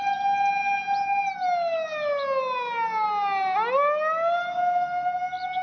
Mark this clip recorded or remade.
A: recorded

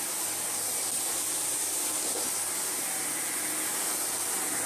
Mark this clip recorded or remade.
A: remade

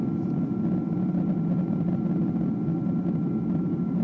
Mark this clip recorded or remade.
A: recorded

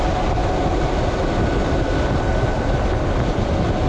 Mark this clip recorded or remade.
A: recorded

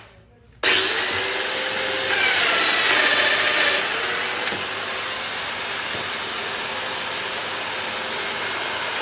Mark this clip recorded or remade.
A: recorded